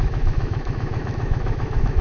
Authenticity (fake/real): fake